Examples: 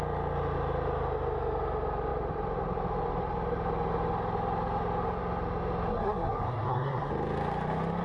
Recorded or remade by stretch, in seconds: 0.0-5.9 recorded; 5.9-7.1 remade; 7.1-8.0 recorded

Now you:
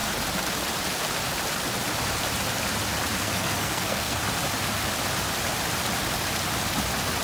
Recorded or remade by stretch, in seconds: 0.0-3.2 recorded; 3.2-4.2 remade; 4.2-7.2 recorded

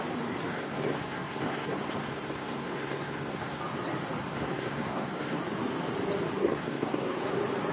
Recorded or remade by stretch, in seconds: 0.0-0.5 recorded; 0.5-3.6 remade; 3.6-4.2 recorded; 4.2-5.4 remade; 5.4-6.4 recorded; 6.4-7.2 remade; 7.2-7.7 recorded

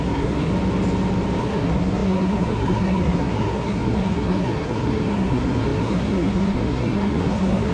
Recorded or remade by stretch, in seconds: 0.0-0.5 remade; 0.5-1.4 recorded; 1.4-7.7 remade

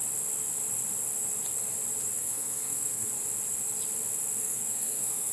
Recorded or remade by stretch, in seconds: 0.0-2.2 recorded; 2.2-3.1 remade; 3.1-4.4 recorded; 4.4-5.3 remade